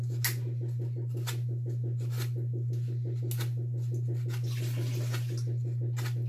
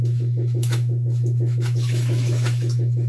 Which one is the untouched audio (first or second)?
first